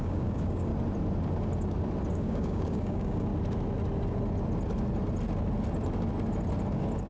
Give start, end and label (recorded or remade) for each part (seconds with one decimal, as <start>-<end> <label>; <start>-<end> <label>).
0.0-0.7 remade; 0.7-2.1 recorded; 2.1-3.3 remade; 3.3-7.1 recorded